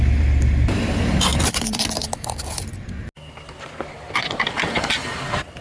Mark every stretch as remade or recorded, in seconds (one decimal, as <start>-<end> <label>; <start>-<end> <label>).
0.0-5.6 recorded